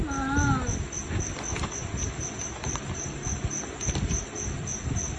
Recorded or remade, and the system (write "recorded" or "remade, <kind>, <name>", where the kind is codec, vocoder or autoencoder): recorded